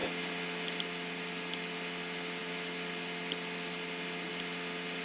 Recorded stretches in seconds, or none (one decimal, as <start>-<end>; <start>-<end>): 0.0-5.0